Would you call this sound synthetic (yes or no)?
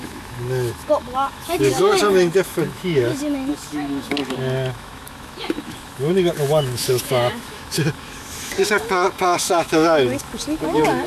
yes